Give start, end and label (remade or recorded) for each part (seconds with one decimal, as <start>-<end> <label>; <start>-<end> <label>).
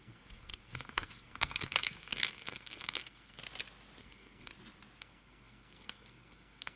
0.0-3.4 remade; 3.4-4.0 recorded; 4.0-4.5 remade; 4.5-5.0 recorded; 5.0-6.8 remade